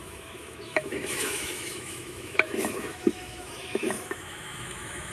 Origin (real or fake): fake